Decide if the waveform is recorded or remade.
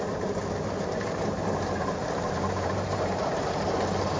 remade